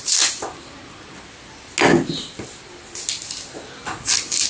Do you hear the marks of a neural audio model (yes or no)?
no